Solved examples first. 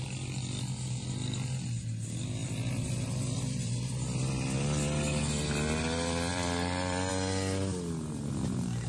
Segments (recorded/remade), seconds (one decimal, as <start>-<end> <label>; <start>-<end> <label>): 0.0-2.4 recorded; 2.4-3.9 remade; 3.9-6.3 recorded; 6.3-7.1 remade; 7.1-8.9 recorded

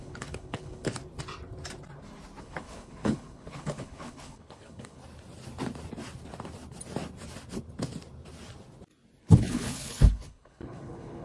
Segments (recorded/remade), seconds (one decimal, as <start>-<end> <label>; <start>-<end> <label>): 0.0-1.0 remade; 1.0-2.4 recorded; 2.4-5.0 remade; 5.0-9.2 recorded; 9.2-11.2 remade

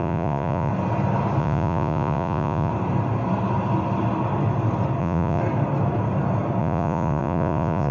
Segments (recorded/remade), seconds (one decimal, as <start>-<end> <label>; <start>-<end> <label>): 0.0-0.7 remade; 0.7-1.4 recorded; 1.4-2.7 remade; 2.7-5.0 recorded; 5.0-5.4 remade; 5.4-6.6 recorded; 6.6-7.9 remade

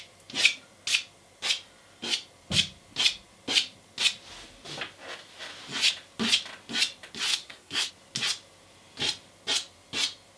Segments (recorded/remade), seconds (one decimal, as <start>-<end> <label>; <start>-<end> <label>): 0.0-7.3 recorded; 7.3-7.9 remade; 7.9-10.4 recorded

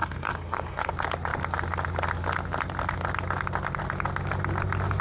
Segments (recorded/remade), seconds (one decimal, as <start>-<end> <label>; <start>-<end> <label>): 0.0-0.9 remade; 0.9-5.0 recorded

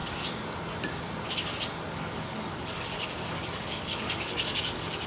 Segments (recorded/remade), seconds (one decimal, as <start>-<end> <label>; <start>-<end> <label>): 0.0-1.9 recorded; 1.9-5.1 remade

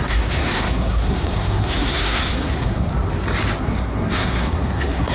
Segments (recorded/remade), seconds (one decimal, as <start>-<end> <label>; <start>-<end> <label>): 0.0-2.9 remade; 2.9-3.6 recorded; 3.6-5.1 remade